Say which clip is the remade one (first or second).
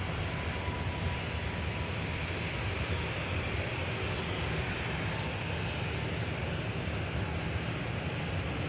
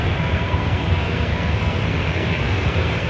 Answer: second